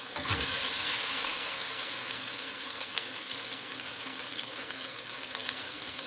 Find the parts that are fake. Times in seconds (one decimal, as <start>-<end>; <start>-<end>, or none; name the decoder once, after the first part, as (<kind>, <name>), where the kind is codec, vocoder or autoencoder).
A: 0.0-6.1 (codec, SNAC)